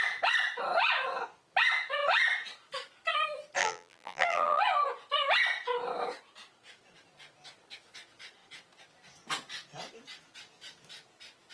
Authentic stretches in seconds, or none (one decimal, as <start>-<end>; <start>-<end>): 0.0-3.6; 4.6-11.5